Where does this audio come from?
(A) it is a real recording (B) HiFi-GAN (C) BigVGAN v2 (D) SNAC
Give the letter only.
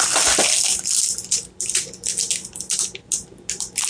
A